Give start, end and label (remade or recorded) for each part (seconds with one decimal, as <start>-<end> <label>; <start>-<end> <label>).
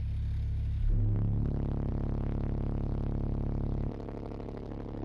0.0-1.9 recorded; 1.9-3.9 remade; 3.9-5.0 recorded